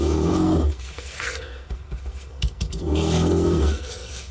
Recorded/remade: remade